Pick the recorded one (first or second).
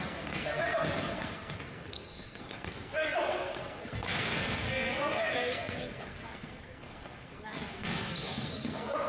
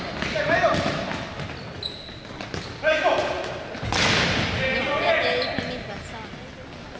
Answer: second